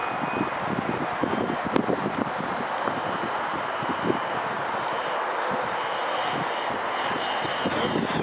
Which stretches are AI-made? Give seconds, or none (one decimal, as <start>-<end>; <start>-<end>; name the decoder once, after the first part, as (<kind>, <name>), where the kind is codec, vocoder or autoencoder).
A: none